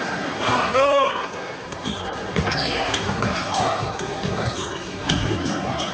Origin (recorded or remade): remade